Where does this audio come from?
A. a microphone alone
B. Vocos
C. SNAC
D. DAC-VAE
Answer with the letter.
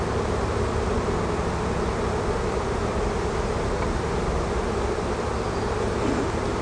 A